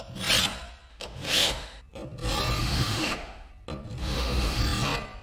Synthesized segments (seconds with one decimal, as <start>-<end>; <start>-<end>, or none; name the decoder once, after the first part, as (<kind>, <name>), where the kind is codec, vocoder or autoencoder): 0.9-1.8 (autoencoder, DAC-VAE); 2.6-3.5; 4.0-4.6